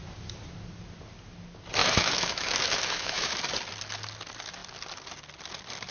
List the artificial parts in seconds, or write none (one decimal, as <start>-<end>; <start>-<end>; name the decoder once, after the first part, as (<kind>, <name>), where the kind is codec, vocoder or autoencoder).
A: 1.8-3.3 (autoencoder, DAC-VAE)